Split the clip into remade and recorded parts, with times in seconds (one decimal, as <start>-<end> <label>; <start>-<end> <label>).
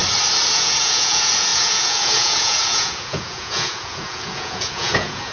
0.0-0.5 recorded; 0.5-5.3 remade